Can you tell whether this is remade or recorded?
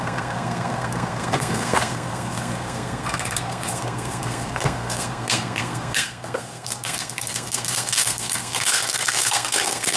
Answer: remade